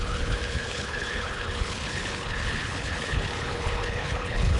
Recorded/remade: remade